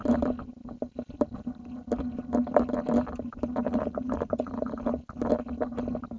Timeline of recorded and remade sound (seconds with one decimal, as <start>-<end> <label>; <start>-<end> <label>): 0.0-3.6 recorded; 3.6-4.8 remade; 4.8-6.2 recorded